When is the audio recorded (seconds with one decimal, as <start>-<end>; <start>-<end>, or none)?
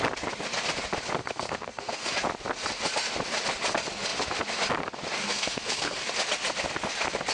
0.0-1.2; 2.1-5.2; 6.1-7.3